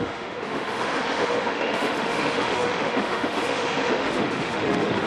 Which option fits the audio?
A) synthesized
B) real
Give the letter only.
A